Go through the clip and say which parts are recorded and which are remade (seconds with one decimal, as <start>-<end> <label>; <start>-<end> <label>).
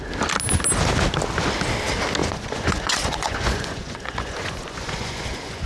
0.0-2.2 recorded; 2.2-5.7 remade